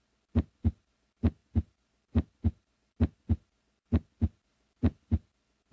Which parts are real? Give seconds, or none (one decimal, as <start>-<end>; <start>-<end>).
0.0-1.4; 3.0-4.5; 5.1-5.7